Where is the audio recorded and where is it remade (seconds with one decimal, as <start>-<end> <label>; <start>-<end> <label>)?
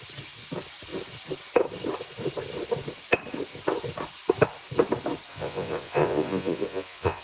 0.0-5.3 recorded; 5.3-7.2 remade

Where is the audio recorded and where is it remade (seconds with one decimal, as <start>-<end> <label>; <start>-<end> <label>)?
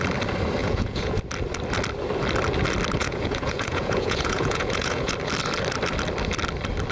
0.0-0.6 recorded; 0.6-1.2 remade; 1.2-3.0 recorded; 3.0-5.1 remade; 5.1-6.9 recorded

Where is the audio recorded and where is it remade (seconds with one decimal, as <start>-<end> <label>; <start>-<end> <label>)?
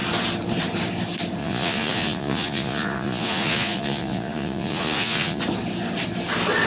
0.0-1.4 recorded; 1.4-5.4 remade; 5.4-6.7 recorded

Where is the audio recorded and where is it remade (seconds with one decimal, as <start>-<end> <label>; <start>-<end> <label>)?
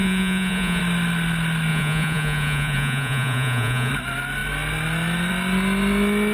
0.0-0.8 remade; 0.8-1.7 recorded; 1.7-3.9 remade; 3.9-6.3 recorded